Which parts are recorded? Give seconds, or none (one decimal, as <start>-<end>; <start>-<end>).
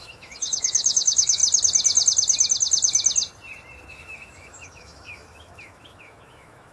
1.4-3.9